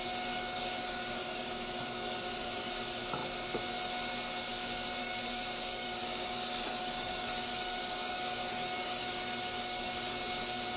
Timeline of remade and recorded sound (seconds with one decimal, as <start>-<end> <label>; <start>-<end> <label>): 0.0-1.2 recorded; 1.2-2.5 remade; 2.5-5.0 recorded; 5.0-10.2 remade; 10.2-10.8 recorded